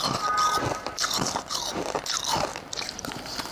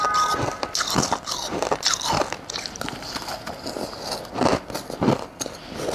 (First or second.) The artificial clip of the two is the first